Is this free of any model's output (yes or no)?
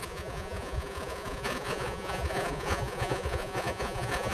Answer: no